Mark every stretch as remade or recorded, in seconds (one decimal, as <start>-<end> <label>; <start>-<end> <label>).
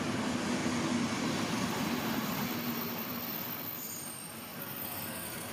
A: 0.0-4.6 recorded; 4.6-5.5 remade